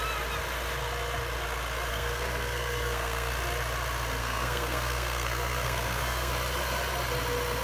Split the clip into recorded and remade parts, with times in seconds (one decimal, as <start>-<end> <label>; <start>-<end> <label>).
0.0-1.9 recorded; 1.9-3.3 remade; 3.3-4.2 recorded; 4.2-6.3 remade; 6.3-7.6 recorded

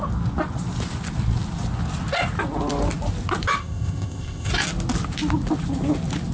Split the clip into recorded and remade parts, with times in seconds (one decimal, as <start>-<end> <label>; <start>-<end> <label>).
0.0-3.6 recorded; 3.6-4.5 remade; 4.5-6.3 recorded